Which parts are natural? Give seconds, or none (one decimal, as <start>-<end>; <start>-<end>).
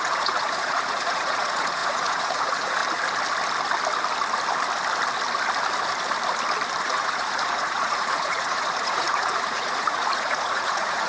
2.8-6.8